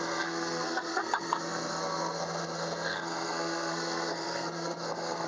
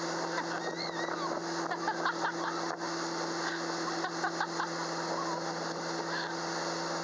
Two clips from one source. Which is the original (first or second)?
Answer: second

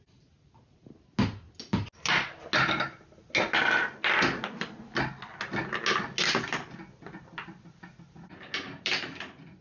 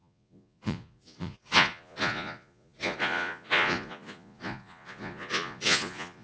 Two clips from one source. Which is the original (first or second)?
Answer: first